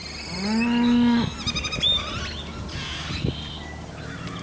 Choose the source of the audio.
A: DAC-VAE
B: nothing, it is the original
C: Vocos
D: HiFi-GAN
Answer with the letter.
B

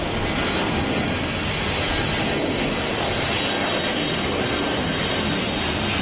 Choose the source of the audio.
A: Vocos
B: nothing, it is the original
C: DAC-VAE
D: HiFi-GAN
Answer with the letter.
B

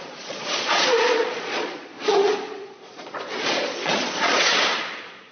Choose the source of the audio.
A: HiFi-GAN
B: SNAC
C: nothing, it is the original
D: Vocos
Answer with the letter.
D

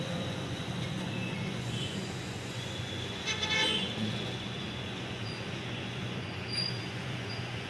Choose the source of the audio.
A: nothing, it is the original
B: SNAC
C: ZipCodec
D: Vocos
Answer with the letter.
D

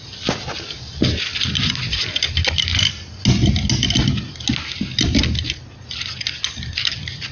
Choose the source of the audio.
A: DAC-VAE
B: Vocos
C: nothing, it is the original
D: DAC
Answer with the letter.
C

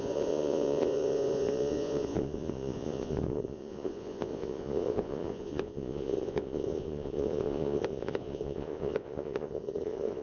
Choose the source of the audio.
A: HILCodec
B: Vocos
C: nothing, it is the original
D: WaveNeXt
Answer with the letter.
B